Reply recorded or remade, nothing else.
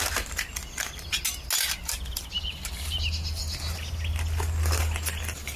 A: recorded